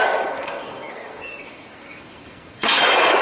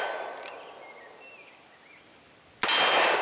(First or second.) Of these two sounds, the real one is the second